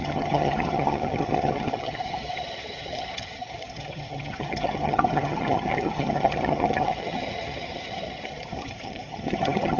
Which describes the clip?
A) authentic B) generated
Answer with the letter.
B